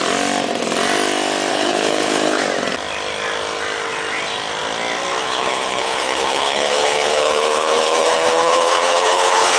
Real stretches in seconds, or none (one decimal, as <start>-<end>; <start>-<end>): 0.0-1.5; 2.4-5.2